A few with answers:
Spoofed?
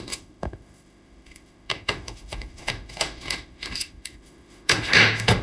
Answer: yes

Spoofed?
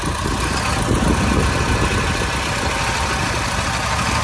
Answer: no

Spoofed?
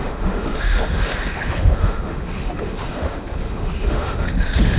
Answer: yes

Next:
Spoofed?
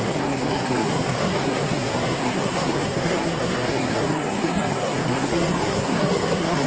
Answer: yes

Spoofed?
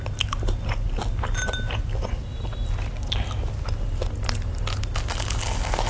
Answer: no